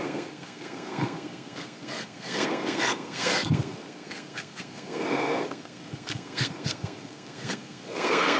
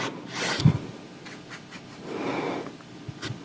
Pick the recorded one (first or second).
second